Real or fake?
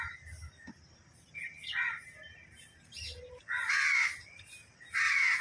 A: real